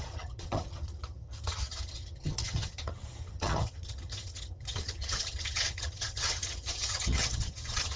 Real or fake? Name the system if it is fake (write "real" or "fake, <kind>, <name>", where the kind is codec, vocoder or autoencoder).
fake, vocoder, HiFi-GAN